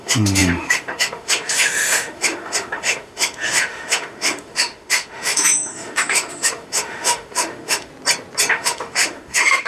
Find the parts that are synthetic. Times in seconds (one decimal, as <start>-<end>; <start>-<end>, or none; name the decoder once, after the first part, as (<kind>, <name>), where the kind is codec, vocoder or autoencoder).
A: 0.0-7.9 (autoencoder, DAC-VAE); 8.5-9.7